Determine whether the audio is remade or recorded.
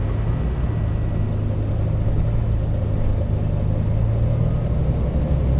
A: recorded